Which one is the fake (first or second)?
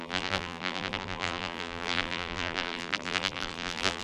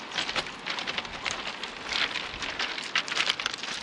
first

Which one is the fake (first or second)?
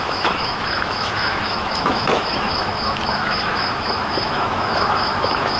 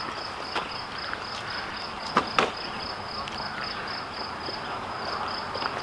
first